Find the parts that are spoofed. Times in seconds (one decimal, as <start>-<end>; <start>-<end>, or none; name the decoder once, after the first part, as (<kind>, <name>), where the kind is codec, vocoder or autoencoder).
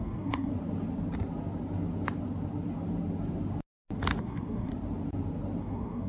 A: 0.0-0.5 (codec, SNAC); 4.2-4.7; 5.6-6.1